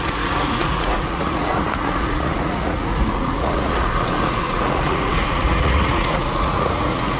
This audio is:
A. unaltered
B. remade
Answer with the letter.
B